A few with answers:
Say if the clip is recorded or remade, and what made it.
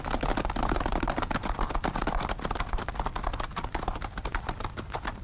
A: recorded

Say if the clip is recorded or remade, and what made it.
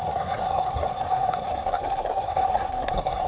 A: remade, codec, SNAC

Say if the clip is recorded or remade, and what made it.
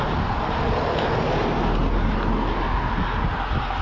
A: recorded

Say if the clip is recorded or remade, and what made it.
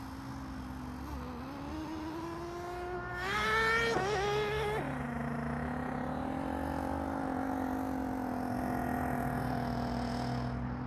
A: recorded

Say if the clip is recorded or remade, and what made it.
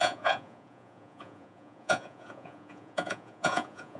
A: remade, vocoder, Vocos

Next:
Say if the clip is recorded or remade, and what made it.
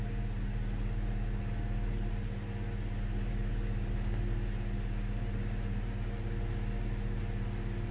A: recorded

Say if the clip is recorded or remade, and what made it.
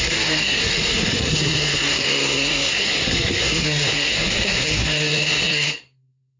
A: remade, codec, SNAC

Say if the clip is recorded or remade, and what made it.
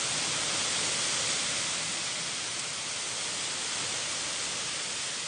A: recorded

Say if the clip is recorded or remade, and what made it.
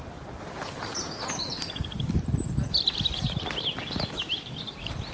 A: recorded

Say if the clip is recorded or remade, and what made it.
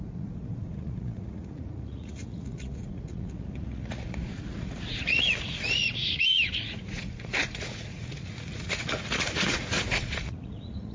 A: remade, vocoder, Vocos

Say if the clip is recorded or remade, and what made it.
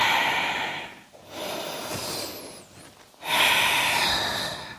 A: recorded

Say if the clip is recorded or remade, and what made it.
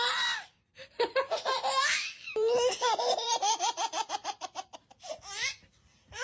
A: remade, vocoder, BigVGAN v2